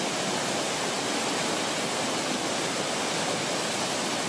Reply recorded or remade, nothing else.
recorded